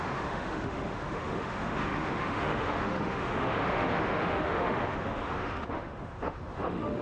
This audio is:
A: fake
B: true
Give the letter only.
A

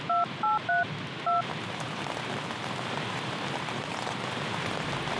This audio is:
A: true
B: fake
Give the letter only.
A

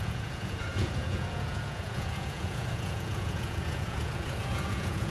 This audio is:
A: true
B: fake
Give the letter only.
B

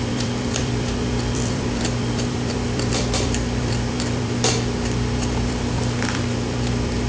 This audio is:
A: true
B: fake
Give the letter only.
B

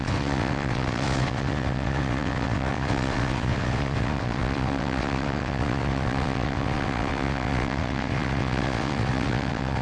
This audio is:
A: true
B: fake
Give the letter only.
B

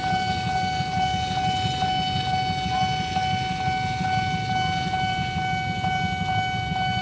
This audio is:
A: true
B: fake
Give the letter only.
A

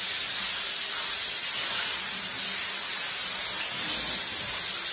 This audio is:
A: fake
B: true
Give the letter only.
B